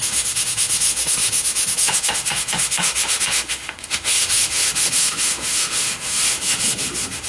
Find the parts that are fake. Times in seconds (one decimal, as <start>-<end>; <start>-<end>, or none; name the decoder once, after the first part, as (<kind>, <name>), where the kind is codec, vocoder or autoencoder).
0.0-7.3 (autoencoder, DAC-VAE)